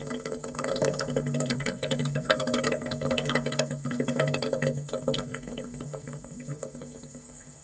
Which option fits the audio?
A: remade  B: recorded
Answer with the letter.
A